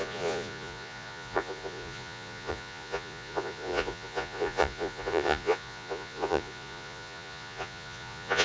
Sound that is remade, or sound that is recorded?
remade